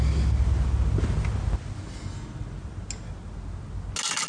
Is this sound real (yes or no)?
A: yes